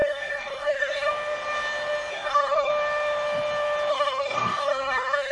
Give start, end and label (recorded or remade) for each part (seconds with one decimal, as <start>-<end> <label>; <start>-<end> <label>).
0.0-1.1 remade; 1.1-2.1 recorded; 2.1-2.7 remade; 2.7-3.9 recorded; 3.9-5.3 remade